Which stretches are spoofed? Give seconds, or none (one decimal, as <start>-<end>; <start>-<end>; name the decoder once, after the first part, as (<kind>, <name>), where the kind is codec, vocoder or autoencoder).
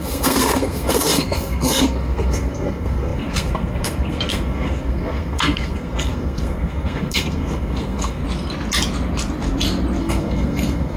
0.0-8.2 (codec, SNAC); 10.0-11.0